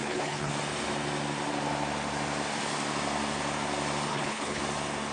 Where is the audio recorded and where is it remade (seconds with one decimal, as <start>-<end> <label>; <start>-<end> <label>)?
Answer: 0.0-0.5 remade; 0.5-4.1 recorded; 4.1-4.6 remade; 4.6-5.1 recorded